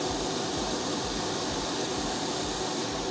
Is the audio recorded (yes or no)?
no